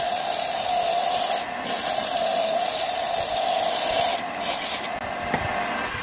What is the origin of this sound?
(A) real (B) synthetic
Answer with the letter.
A